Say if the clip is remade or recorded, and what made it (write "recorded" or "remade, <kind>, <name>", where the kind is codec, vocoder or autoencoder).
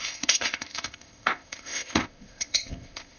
remade, codec, ZipCodec